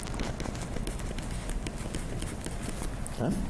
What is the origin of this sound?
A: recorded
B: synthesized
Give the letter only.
A